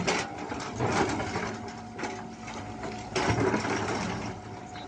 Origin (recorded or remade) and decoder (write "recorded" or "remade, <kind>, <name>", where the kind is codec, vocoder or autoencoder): recorded